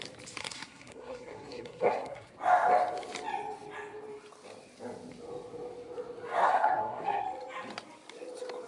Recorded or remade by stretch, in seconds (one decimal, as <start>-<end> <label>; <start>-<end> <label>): 0.0-0.4 recorded; 0.4-2.3 remade; 2.3-6.4 recorded; 6.4-7.2 remade; 7.2-8.7 recorded